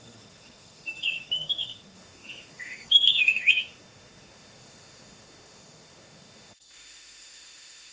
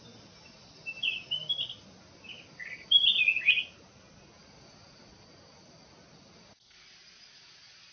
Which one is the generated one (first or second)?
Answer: first